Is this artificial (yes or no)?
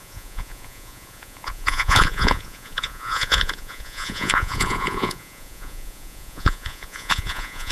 yes